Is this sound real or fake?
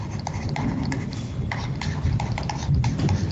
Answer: fake